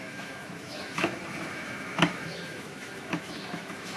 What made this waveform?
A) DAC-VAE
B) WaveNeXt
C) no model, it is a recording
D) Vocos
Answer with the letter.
A